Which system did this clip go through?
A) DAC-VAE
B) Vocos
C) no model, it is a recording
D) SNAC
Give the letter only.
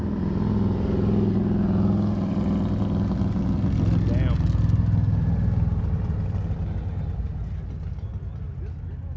C